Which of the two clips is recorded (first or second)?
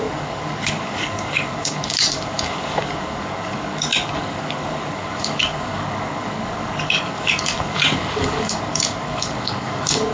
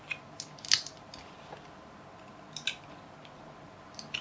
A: second